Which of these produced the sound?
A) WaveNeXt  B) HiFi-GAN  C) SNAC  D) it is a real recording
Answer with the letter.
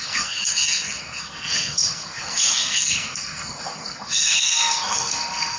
C